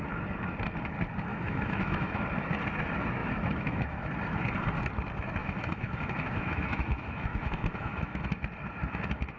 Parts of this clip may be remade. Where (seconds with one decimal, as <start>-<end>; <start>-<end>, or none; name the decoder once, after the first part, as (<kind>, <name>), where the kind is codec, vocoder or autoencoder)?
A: 1.3-2.2 (autoencoder, DAC-VAE); 3.2-4.1; 5.4-8.2